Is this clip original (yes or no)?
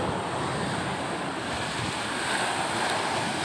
yes